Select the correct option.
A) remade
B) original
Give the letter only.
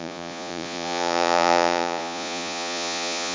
A